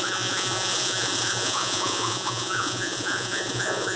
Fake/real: fake